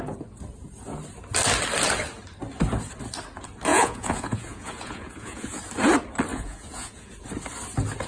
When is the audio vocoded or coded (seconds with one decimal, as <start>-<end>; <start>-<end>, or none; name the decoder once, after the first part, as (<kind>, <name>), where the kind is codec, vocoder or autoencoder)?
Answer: 3.7-5.6 (vocoder, Vocos); 6.3-7.1